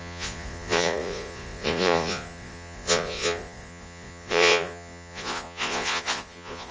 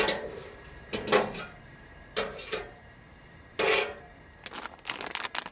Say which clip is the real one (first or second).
second